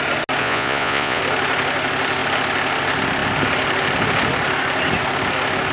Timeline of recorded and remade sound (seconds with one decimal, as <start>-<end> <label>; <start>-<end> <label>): 0.0-0.4 recorded; 0.4-1.2 remade; 1.2-5.7 recorded